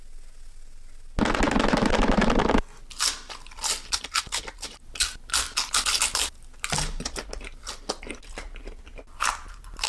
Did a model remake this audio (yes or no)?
no